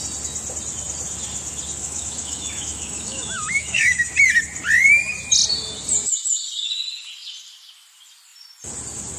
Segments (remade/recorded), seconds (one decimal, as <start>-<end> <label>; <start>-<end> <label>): 0.0-1.8 recorded; 1.8-4.1 remade; 4.1-9.2 recorded